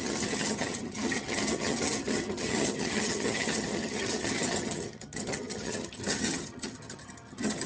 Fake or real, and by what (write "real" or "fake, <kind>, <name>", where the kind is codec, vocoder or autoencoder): fake, vocoder, HiFi-GAN